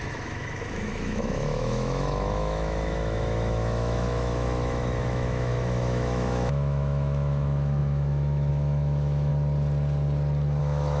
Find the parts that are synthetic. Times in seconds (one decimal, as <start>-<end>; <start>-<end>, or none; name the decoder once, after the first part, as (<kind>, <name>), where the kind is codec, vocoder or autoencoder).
0.0-9.3 (autoencoder, DAC-VAE); 10.6-11.0